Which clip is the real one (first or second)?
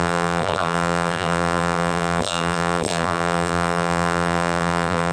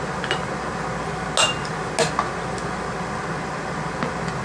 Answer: second